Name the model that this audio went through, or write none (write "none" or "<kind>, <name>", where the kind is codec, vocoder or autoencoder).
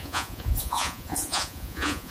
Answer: vocoder, Vocos